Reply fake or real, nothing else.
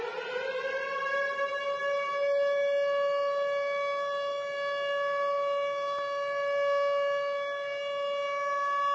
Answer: real